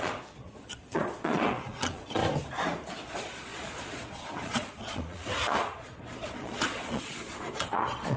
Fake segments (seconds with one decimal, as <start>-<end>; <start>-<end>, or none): 0.0-2.2; 2.9-8.2